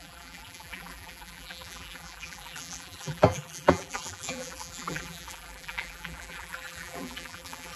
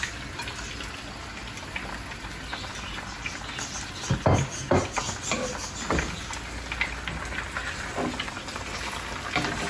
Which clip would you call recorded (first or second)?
second